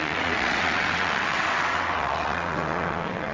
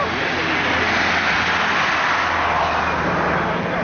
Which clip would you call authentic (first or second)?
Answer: second